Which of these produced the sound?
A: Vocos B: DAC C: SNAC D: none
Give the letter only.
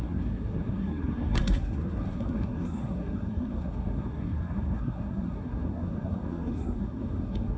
C